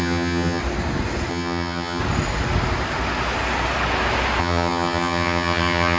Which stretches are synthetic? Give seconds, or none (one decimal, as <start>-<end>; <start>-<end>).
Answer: 0.0-0.6; 1.3-2.0; 4.4-6.0